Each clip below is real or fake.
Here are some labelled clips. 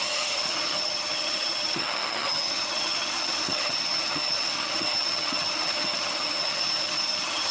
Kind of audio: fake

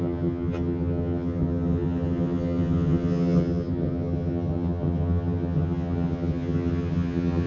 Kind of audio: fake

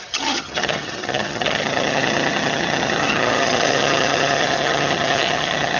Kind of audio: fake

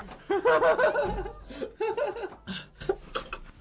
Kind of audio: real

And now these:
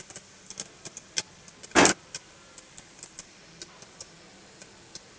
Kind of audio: real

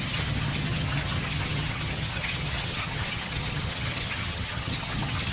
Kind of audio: fake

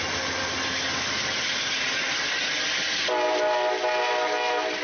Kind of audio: real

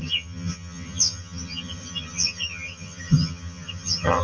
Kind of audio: fake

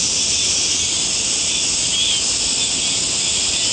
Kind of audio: real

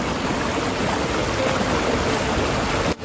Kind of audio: real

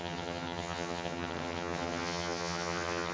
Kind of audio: fake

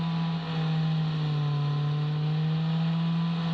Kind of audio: real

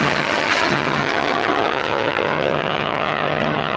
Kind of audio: fake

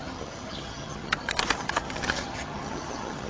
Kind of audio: fake